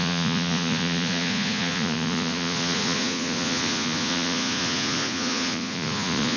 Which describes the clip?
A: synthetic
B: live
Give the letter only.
A